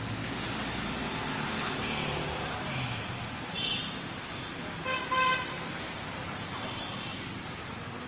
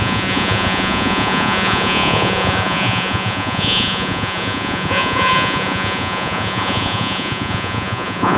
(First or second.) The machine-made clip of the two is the second